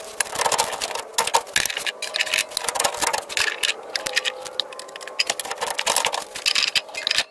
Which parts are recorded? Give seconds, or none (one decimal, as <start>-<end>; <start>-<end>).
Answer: 0.0-7.3